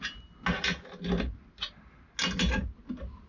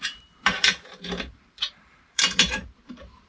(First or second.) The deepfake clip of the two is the second